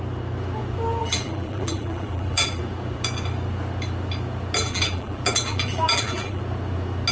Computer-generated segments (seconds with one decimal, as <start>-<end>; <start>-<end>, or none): 1.0-2.6; 4.6-6.4